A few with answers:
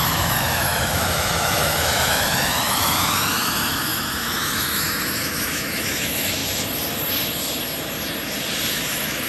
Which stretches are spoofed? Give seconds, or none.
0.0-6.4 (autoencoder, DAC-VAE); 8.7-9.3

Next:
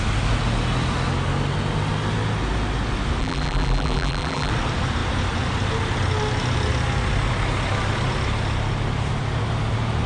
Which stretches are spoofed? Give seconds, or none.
3.2-4.5 (vocoder, BigVGAN v2)

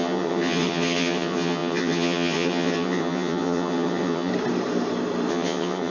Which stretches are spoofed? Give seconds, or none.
0.0-4.3 (vocoder, HiFi-GAN); 5.3-5.9

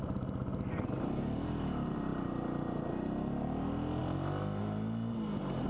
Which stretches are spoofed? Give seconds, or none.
none

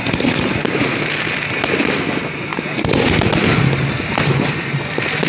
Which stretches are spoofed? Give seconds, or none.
none

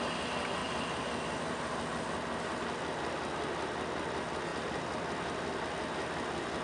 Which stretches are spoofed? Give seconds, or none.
none

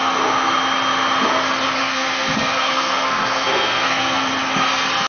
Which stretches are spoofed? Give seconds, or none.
1.8-4.3 (codec, SNAC)

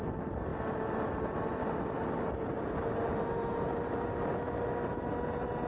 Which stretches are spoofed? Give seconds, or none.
none